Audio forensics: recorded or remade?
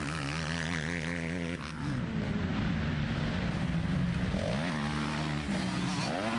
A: recorded